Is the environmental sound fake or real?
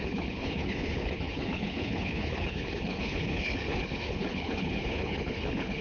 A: fake